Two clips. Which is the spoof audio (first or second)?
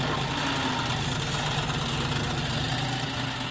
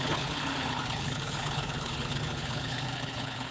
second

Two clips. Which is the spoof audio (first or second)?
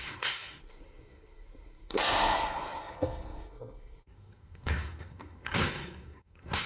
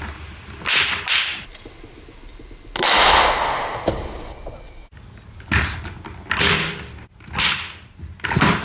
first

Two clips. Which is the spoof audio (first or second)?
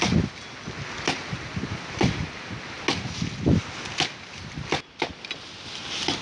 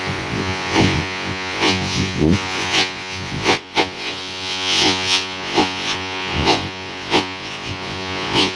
second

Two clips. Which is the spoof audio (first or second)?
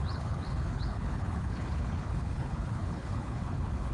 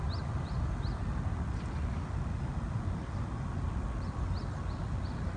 first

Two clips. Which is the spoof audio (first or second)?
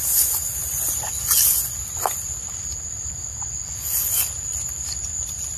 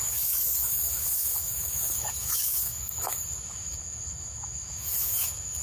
second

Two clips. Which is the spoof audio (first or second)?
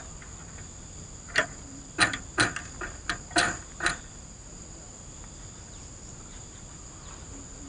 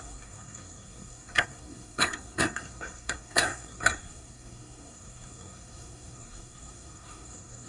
second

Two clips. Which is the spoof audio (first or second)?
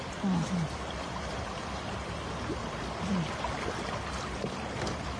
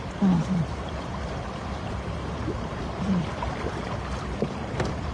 second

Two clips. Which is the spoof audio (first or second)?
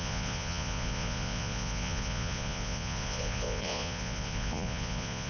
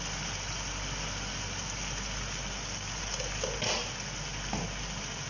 first